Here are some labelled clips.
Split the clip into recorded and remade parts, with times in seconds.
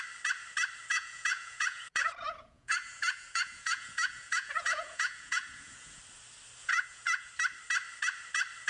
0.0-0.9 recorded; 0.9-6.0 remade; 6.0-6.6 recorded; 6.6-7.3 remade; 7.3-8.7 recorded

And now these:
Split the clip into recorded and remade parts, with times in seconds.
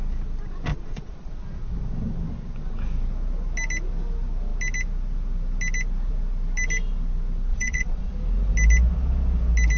0.0-0.7 recorded; 0.7-1.3 remade; 1.3-7.5 recorded; 7.5-8.1 remade; 8.1-9.8 recorded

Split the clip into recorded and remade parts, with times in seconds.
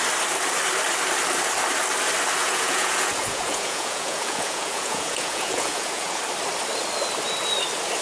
0.0-2.4 recorded; 2.4-6.2 remade; 6.2-8.0 recorded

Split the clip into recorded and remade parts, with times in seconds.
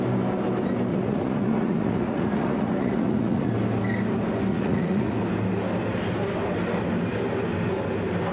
0.0-0.9 recorded; 0.9-3.5 remade; 3.5-4.5 recorded; 4.5-5.1 remade; 5.1-8.3 recorded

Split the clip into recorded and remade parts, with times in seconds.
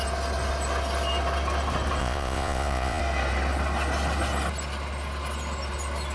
0.0-2.0 recorded; 2.0-3.0 remade; 3.0-6.1 recorded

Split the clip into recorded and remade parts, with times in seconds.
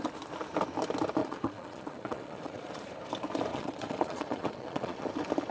0.0-1.2 recorded; 1.2-2.9 remade; 2.9-3.5 recorded; 3.5-5.1 remade; 5.1-5.5 recorded